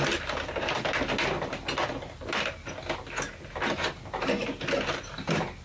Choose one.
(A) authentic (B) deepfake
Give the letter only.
A